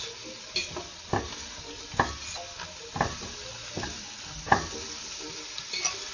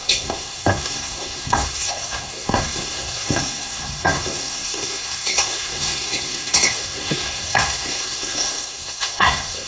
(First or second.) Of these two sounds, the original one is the first